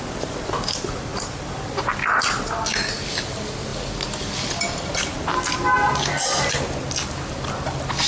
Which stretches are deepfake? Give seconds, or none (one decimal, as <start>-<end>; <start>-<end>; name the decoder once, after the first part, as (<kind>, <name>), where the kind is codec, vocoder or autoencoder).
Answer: none